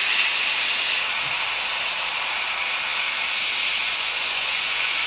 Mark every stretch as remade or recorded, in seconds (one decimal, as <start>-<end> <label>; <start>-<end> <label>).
0.0-3.8 recorded; 3.8-5.1 remade